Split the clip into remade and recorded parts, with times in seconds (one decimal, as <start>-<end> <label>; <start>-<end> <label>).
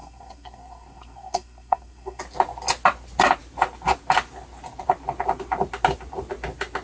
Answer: 0.0-2.2 remade; 2.2-6.8 recorded